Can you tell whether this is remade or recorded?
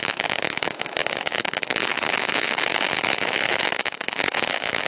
remade